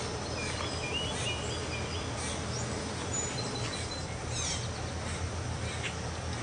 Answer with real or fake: real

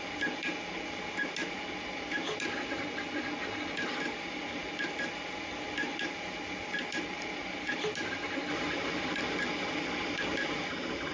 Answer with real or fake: real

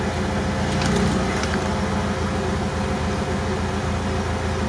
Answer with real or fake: real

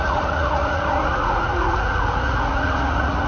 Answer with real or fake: fake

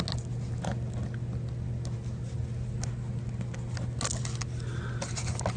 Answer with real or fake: real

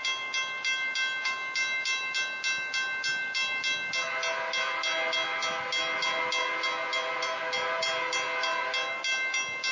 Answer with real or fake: real